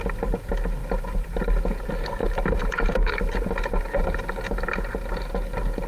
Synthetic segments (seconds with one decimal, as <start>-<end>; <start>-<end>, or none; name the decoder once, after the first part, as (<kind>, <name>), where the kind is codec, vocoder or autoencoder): 0.8-1.4 (vocoder, BigVGAN v2); 2.2-4.6